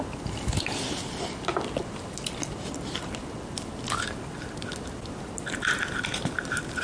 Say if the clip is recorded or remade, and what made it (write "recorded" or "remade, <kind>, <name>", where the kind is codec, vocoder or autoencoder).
recorded